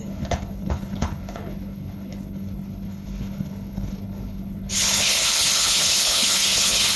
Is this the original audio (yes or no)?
no